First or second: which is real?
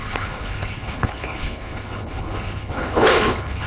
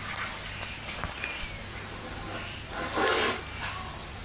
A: second